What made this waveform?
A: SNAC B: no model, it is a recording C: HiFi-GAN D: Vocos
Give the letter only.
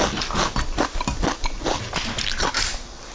B